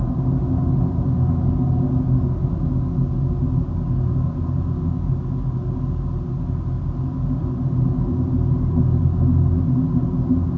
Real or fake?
real